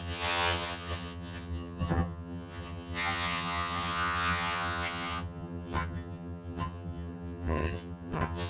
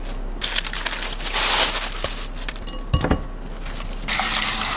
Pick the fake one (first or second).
first